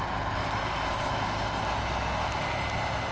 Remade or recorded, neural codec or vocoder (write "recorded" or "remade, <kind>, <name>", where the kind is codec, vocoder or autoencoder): recorded